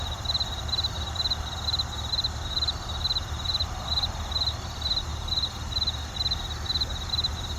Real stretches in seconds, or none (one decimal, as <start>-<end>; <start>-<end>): 0.0-7.6